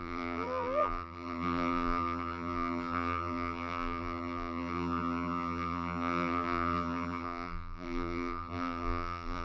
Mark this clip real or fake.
fake